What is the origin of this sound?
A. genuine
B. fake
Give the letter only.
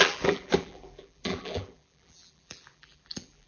B